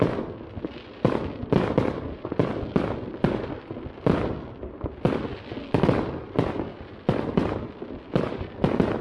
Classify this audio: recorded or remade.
recorded